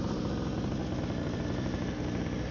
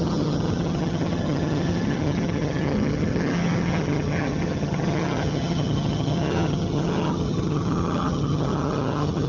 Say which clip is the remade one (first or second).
second